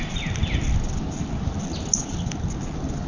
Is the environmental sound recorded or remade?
recorded